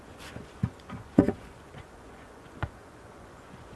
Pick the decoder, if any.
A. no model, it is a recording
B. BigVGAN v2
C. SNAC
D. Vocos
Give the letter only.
D